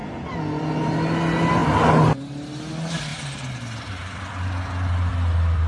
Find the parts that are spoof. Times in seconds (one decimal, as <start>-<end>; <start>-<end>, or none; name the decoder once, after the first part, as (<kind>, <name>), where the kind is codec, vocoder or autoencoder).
none